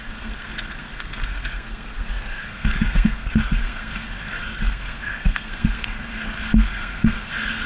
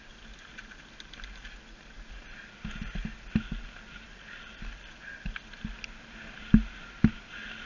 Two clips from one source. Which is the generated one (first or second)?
first